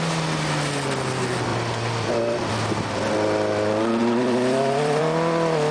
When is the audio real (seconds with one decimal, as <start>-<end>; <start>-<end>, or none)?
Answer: 0.0-1.5; 2.5-4.0; 5.0-5.7